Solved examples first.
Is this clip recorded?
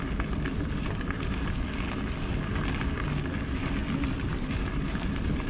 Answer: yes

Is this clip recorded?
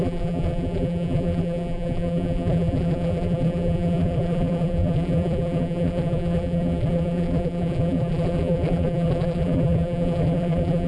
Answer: no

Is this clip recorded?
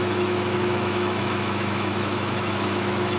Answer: no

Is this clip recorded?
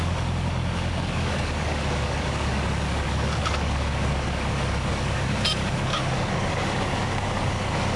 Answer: no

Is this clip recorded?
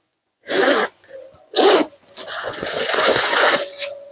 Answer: no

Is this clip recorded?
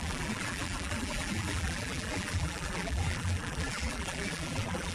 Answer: no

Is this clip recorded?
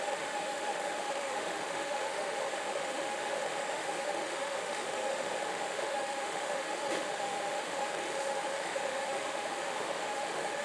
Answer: no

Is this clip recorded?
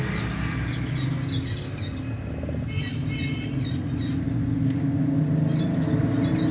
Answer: yes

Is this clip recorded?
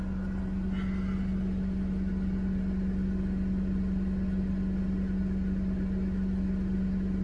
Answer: yes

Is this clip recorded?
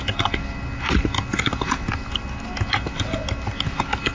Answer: yes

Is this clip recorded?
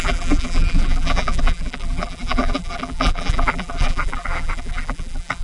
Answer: no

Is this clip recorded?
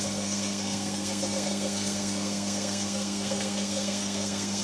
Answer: no